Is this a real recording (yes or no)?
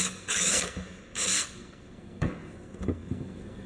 no